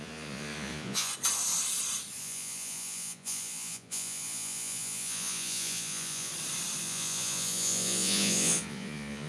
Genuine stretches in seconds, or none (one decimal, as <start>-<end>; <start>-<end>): 1.1-2.2; 6.3-6.8